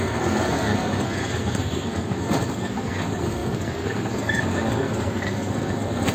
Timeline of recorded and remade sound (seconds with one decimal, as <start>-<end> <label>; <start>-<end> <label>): 0.0-6.1 remade